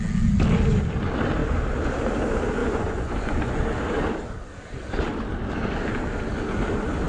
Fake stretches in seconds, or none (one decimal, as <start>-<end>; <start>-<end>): 2.6-3.6